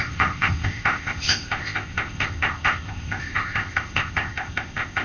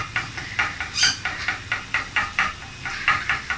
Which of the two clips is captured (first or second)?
second